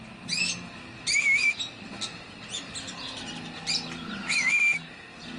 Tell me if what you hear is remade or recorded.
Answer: recorded